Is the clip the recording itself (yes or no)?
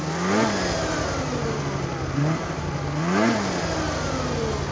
yes